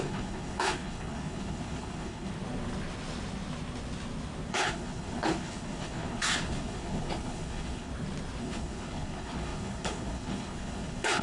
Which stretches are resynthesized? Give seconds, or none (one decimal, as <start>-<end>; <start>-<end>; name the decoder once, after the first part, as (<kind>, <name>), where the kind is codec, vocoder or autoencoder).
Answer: 0.0-2.3 (codec, HILCodec); 4.5-7.9; 8.4-11.2